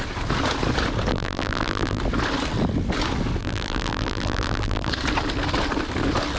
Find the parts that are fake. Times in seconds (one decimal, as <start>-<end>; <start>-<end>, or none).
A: 1.1-2.0; 3.4-4.9